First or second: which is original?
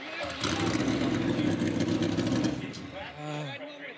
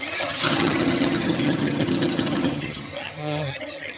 first